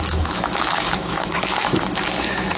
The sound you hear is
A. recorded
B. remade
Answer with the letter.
B